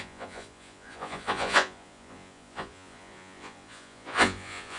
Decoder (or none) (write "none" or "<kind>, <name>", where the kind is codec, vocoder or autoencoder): vocoder, Vocos